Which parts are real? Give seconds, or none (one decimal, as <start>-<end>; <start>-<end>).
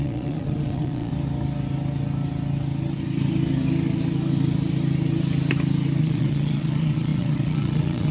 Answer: 1.1-6.0